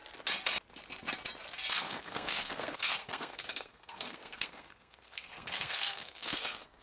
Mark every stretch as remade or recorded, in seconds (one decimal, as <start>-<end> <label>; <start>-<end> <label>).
0.0-1.7 recorded; 1.7-6.8 remade